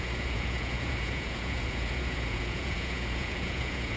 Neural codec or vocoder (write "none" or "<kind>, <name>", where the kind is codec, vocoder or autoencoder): vocoder, Vocos